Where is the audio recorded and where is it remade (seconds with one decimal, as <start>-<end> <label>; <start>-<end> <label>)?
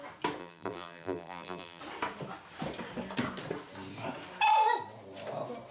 0.0-0.4 recorded; 0.4-1.8 remade; 1.8-5.7 recorded